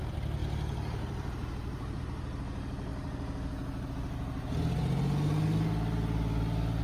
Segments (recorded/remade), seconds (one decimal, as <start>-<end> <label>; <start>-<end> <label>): 0.0-0.4 recorded; 0.4-2.0 remade; 2.0-6.8 recorded